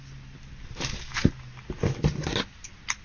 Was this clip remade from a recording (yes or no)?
no